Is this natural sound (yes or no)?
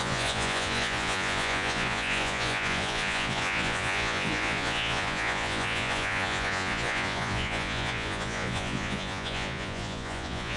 no